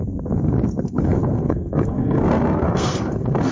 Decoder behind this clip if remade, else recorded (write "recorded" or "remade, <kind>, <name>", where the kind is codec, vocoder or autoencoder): remade, codec, SNAC